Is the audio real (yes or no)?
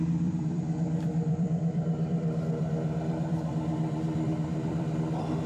no